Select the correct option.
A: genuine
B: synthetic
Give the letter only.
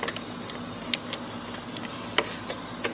A